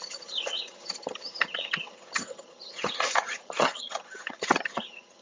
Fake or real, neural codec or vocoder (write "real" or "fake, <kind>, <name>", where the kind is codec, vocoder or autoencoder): fake, vocoder, HiFi-GAN